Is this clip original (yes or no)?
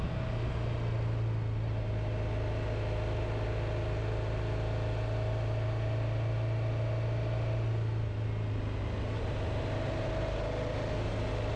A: yes